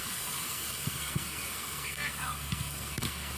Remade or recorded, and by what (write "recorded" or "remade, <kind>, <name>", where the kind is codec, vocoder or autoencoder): remade, codec, SNAC